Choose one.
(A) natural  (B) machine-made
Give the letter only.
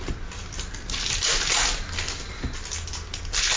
A